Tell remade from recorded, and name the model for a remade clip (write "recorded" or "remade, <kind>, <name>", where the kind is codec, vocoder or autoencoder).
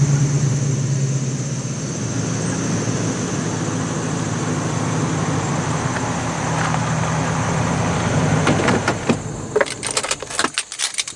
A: recorded